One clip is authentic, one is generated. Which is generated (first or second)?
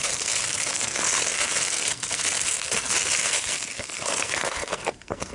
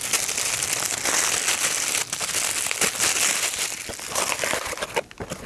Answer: first